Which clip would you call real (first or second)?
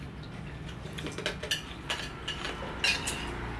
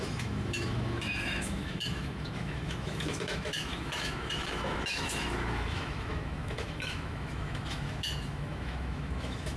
first